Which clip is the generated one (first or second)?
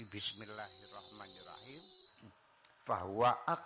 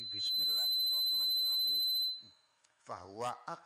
second